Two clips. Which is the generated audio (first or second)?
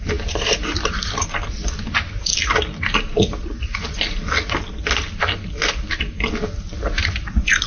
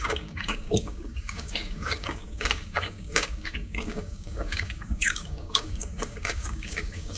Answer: second